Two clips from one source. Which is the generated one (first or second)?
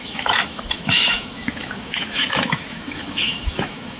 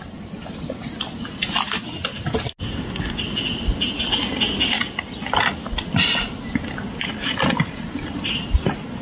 first